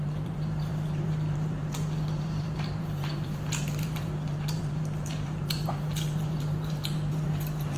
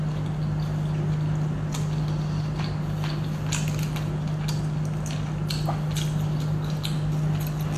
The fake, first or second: first